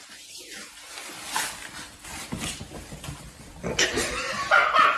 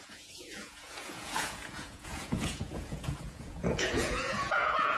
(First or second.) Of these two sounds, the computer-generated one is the second